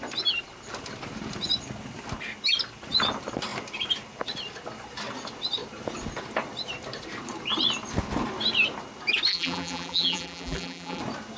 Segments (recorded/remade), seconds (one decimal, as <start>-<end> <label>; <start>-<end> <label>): 0.0-9.3 recorded; 9.3-11.0 remade; 11.0-11.4 recorded